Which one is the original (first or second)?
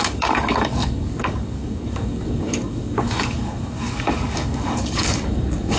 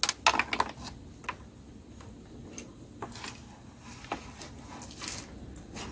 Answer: second